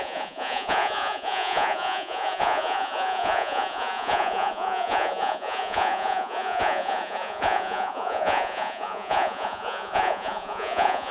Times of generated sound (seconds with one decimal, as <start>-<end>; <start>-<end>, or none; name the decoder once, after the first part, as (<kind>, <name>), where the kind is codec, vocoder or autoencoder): 0.0-11.1 (vocoder, Vocos)